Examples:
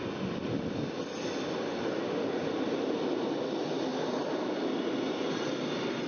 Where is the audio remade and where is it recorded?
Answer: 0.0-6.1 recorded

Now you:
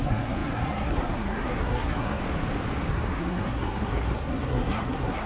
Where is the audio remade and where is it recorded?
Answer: 0.0-2.2 remade; 2.2-2.9 recorded; 2.9-5.3 remade

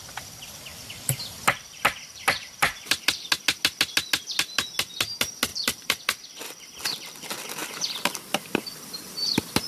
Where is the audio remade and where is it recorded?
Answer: 0.0-0.7 recorded; 0.7-3.3 remade; 3.3-5.5 recorded; 5.5-6.0 remade; 6.0-7.6 recorded; 7.6-9.0 remade; 9.0-9.7 recorded

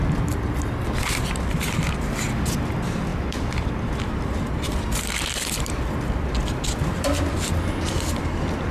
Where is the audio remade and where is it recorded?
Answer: 0.0-3.1 recorded; 3.1-8.7 remade

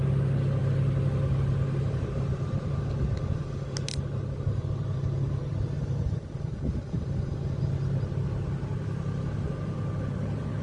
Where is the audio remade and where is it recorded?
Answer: 0.0-10.6 recorded

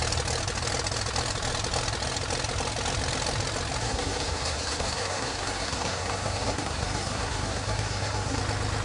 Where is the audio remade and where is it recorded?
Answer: 0.0-3.8 recorded; 3.8-8.4 remade; 8.4-8.8 recorded

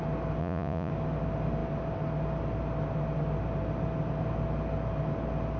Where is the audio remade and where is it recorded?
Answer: 0.0-0.4 recorded; 0.4-0.9 remade; 0.9-5.6 recorded

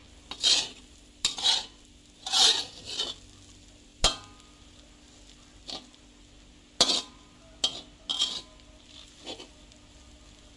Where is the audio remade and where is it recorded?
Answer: 0.0-10.6 recorded